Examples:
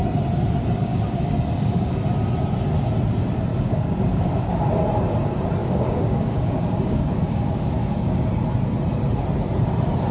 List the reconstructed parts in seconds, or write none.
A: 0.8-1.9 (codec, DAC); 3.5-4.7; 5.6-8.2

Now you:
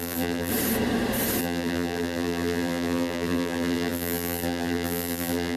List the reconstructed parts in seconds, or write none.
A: 0.0-0.5 (vocoder, BigVGAN v2); 1.4-5.6

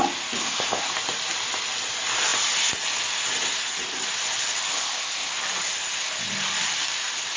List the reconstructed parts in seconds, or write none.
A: 0.4-0.9 (codec, ZipCodec); 4.7-5.3

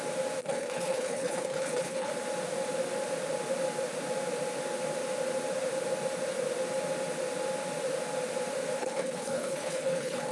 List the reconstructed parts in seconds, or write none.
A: 0.4-2.1 (codec, HILCodec); 8.8-10.3

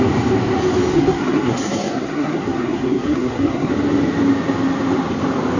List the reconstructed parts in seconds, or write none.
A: 0.9-3.7 (codec, SNAC)

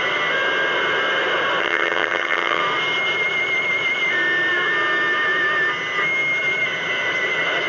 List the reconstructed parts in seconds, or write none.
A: 1.6-2.6 (vocoder, HiFi-GAN)

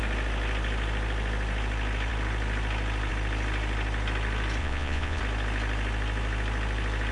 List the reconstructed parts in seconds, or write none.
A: 4.6-5.2 (vocoder, Vocos)